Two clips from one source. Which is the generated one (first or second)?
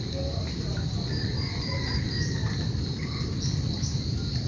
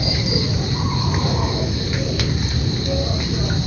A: first